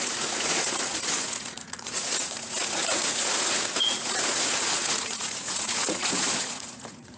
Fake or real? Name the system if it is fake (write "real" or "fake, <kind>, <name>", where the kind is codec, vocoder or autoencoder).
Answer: fake, vocoder, Vocos